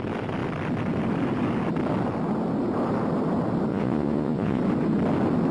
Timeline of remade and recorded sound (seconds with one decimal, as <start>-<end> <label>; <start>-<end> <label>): 0.0-3.7 recorded; 3.7-4.6 remade; 4.6-5.5 recorded